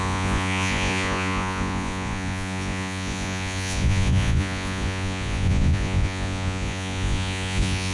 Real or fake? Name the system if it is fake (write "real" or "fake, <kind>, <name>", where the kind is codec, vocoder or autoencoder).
fake, vocoder, Vocos